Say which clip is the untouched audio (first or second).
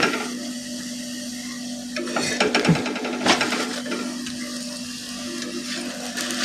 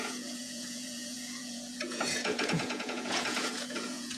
first